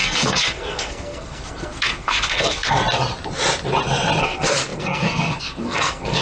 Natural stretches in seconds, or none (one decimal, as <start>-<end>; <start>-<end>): 2.8-4.2